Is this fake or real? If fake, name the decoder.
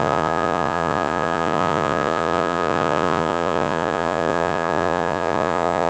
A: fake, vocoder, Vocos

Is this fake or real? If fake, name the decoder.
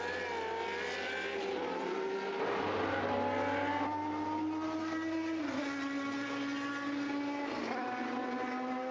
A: real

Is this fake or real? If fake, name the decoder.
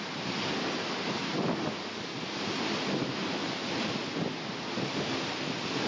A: real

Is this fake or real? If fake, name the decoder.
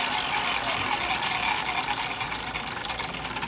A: real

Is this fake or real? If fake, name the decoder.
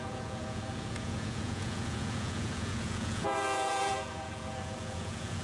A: fake, vocoder, Vocos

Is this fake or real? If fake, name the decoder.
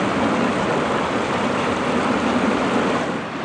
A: real